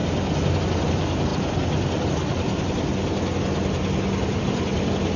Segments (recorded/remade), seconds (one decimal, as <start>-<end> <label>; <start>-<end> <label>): 0.0-5.2 recorded